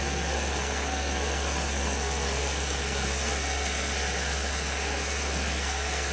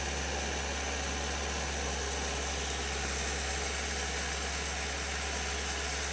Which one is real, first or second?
second